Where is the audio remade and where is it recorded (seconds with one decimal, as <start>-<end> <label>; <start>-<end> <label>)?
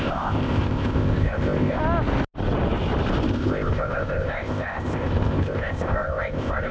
0.0-1.8 remade; 1.8-3.3 recorded; 3.3-6.7 remade